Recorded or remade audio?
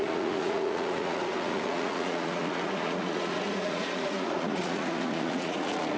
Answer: remade